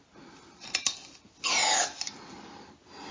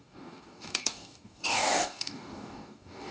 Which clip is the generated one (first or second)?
second